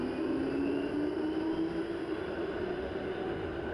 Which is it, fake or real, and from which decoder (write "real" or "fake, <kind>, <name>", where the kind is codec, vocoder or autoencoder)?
real